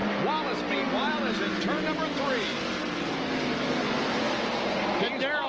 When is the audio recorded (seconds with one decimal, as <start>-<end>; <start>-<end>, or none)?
0.0-5.5